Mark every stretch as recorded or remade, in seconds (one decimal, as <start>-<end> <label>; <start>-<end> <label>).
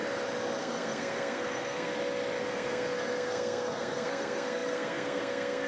0.0-0.6 recorded; 0.6-1.9 remade; 1.9-2.5 recorded; 2.5-5.7 remade